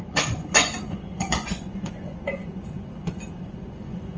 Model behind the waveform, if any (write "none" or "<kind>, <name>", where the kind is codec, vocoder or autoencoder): vocoder, Vocos